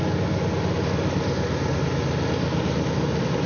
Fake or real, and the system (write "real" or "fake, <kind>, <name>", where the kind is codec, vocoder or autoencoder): real